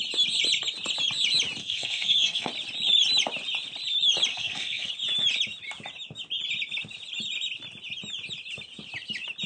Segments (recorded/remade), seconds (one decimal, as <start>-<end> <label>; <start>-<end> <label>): 0.0-1.6 recorded; 1.6-2.5 remade; 2.5-4.3 recorded; 4.3-4.9 remade; 4.9-9.5 recorded